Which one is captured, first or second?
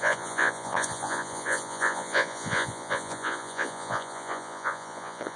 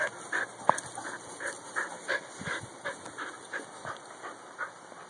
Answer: second